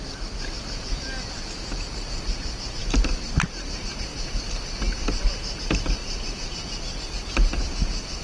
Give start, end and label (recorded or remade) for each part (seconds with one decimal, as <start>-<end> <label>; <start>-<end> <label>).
0.0-8.2 recorded